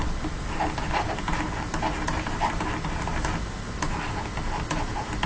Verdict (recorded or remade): recorded